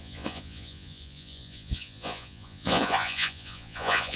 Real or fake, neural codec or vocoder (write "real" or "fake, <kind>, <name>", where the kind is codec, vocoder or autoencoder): fake, vocoder, Vocos